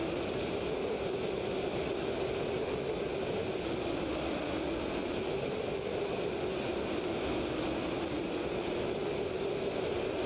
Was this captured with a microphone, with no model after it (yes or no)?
yes